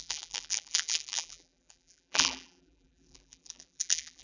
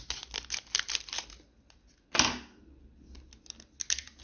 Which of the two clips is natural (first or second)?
second